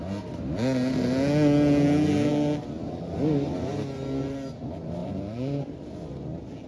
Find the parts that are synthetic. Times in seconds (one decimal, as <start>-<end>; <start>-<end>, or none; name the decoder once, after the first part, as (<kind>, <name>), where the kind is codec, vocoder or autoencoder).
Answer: 5.0-5.8 (vocoder, BigVGAN v2)